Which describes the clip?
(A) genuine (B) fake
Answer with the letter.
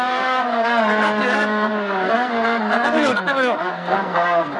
B